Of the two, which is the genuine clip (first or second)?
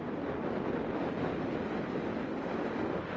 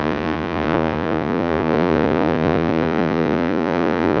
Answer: first